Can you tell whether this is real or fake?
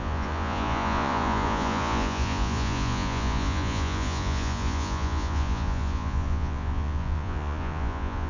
fake